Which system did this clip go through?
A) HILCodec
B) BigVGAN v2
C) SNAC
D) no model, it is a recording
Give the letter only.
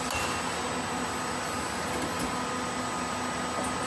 D